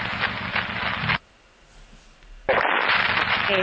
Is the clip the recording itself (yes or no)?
yes